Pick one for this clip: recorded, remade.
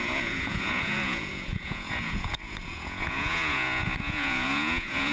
remade